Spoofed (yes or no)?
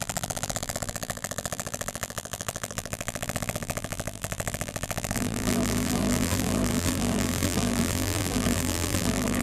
yes